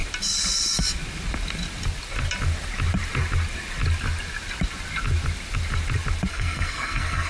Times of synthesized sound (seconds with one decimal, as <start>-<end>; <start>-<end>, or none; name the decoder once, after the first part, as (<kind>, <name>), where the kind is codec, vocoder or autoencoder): 6.3-7.3 (codec, SNAC)